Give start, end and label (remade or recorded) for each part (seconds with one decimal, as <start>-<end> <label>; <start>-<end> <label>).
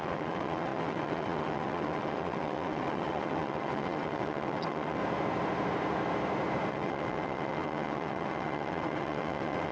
0.0-5.0 remade; 5.0-6.7 recorded; 6.7-9.7 remade